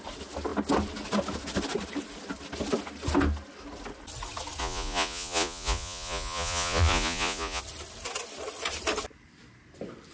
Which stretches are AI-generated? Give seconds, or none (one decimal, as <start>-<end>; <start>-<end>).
4.6-7.6